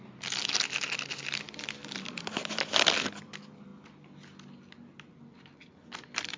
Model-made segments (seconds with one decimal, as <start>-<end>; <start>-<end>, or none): none